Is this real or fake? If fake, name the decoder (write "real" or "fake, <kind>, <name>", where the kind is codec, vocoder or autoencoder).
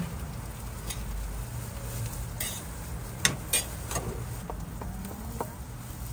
real